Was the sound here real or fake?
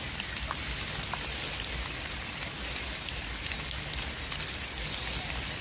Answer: real